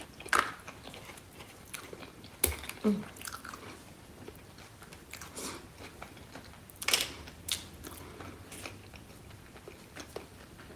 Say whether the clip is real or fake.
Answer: real